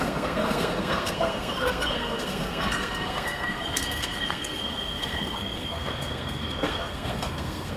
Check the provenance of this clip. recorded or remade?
remade